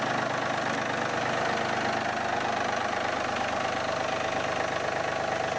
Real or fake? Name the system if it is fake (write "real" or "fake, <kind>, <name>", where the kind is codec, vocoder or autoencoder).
real